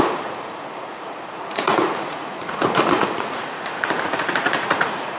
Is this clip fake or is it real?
fake